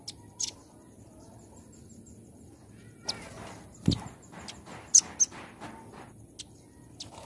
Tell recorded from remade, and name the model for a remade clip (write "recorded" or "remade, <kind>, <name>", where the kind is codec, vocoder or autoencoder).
recorded